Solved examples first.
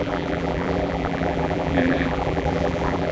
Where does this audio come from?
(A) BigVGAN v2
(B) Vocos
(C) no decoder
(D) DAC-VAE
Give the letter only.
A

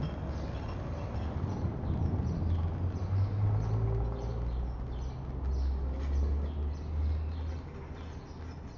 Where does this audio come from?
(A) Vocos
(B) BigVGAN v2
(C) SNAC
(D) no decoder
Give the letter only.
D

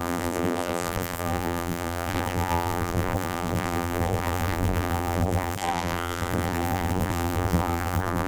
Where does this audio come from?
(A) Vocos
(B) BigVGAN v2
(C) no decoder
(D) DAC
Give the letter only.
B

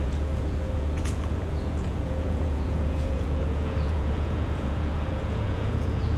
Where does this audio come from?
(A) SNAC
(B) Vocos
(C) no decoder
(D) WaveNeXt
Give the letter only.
B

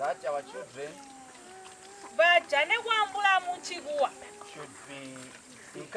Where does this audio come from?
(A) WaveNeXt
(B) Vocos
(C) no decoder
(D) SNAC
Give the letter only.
C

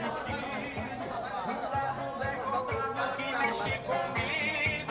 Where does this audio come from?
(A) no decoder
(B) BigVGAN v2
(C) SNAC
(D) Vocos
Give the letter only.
A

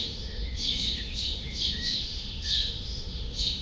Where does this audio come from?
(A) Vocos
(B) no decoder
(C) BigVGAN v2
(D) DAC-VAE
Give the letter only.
D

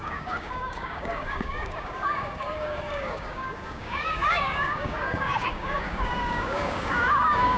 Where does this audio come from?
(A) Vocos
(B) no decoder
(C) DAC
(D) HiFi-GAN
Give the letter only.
C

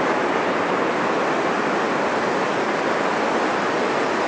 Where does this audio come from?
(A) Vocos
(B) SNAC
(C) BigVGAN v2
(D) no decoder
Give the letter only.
D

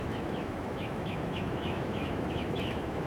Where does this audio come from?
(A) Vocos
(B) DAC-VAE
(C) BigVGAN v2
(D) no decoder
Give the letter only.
B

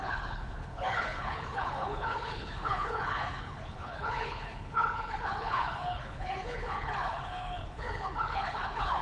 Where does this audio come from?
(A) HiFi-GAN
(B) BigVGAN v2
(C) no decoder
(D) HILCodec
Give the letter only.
D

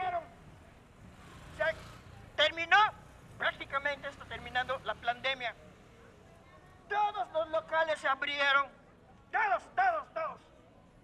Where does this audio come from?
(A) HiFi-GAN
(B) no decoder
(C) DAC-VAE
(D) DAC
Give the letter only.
B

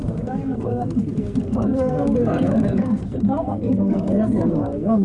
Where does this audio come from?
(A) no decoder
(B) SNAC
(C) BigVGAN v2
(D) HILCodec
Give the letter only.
B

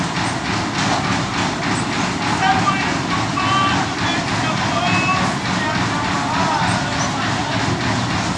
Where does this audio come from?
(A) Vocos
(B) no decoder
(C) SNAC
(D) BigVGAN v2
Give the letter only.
B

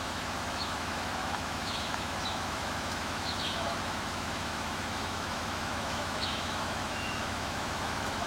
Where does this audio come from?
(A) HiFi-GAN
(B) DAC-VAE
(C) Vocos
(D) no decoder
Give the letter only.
B